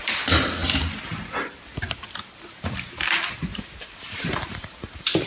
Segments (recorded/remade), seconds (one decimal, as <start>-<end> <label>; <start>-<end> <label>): 0.0-3.5 recorded; 3.5-5.3 remade